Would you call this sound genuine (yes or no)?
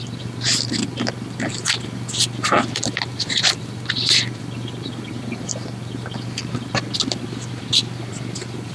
yes